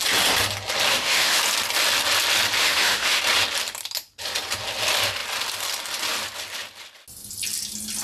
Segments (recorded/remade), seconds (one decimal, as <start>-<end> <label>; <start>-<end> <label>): 0.0-0.9 recorded; 0.9-1.4 remade; 1.4-2.6 recorded; 2.6-3.2 remade; 3.2-8.0 recorded